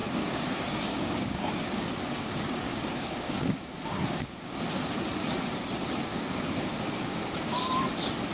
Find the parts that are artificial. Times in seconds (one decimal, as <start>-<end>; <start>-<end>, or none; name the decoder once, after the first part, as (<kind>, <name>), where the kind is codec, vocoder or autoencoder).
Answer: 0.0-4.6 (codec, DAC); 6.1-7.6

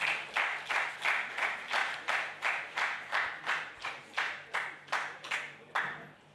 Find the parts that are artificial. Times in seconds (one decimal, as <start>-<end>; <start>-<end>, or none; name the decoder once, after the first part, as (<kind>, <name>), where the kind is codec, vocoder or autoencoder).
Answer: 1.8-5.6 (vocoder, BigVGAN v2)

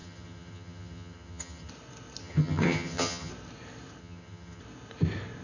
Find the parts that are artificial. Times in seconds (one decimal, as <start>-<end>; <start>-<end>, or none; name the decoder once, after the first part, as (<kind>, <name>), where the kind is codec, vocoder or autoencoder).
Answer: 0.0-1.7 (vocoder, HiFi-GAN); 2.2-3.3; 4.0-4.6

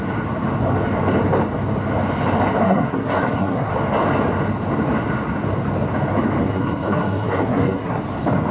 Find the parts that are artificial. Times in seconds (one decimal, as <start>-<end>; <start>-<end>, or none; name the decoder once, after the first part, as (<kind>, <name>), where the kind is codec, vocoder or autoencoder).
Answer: 2.6-3.7 (codec, SNAC); 6.4-8.0